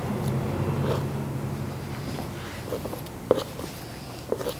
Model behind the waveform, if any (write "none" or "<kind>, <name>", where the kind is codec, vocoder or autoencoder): none